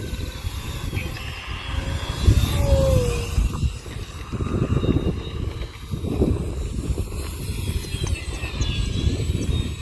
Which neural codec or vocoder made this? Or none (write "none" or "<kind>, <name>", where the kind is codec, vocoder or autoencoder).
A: none